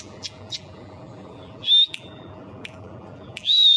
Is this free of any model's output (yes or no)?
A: no